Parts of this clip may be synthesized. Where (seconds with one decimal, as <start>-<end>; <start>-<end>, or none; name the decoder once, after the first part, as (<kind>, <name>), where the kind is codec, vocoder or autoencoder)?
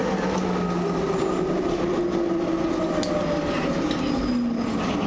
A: none